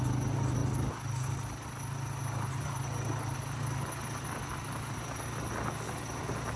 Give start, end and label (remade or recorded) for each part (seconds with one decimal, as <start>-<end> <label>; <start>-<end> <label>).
0.0-6.6 recorded